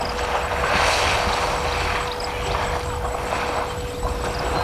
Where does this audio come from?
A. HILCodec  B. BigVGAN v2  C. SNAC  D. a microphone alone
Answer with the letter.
D